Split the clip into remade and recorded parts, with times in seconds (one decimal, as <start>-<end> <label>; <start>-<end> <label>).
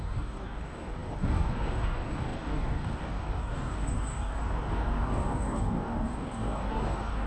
0.0-7.3 remade